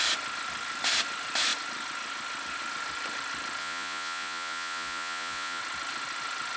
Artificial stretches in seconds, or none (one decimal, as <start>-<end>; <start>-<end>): 3.6-5.6